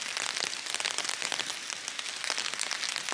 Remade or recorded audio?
recorded